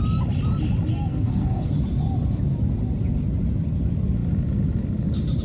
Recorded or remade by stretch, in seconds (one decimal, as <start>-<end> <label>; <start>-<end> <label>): 0.0-0.9 recorded; 0.9-1.7 remade; 1.7-5.4 recorded